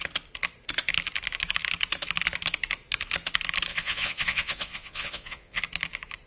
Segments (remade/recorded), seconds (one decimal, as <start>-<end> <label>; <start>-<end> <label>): 0.0-3.7 recorded; 3.7-5.6 remade; 5.6-6.3 recorded